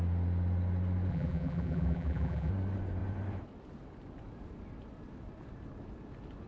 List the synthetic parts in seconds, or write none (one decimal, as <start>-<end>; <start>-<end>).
1.1-2.5